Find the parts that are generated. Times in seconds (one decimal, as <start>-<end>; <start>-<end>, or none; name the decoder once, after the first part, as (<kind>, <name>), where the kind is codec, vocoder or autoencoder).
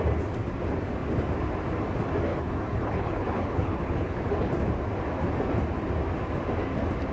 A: 2.3-4.2 (codec, HILCodec)